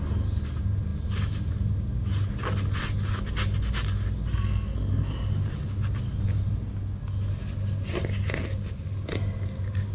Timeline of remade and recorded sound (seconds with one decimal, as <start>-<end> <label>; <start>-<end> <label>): 0.0-4.3 recorded; 4.3-5.1 remade; 5.1-9.9 recorded